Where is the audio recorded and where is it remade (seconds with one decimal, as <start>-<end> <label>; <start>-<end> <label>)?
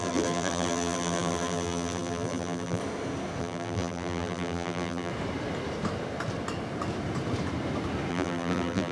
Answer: 0.0-2.8 remade; 2.8-3.4 recorded; 3.4-5.1 remade; 5.1-8.1 recorded; 8.1-8.9 remade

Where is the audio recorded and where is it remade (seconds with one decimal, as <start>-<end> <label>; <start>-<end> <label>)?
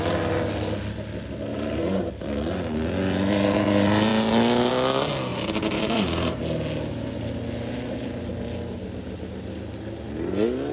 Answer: 0.0-1.5 recorded; 1.5-2.1 remade; 2.1-5.3 recorded; 5.3-6.4 remade; 6.4-10.7 recorded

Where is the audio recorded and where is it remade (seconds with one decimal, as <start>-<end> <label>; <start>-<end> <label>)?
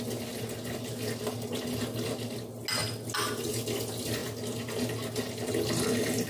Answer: 0.0-6.3 recorded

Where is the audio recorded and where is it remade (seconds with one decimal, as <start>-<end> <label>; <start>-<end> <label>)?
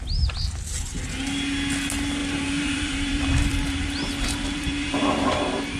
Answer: 0.0-2.2 recorded; 2.2-5.8 remade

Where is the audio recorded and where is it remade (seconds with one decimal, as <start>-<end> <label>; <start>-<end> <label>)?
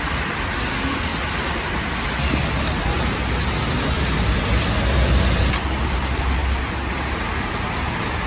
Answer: 0.0-6.4 recorded; 6.4-6.9 remade; 6.9-8.3 recorded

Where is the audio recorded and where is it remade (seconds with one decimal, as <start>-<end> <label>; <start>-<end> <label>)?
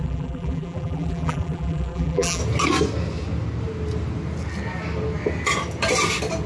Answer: 0.0-2.4 remade; 2.4-6.5 recorded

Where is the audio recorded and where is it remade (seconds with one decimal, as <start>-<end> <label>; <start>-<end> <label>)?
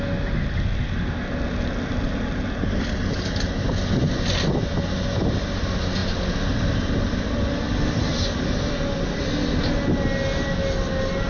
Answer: 0.0-6.0 recorded; 6.0-8.8 remade; 8.8-11.3 recorded